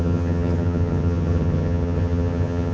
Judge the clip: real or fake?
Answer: fake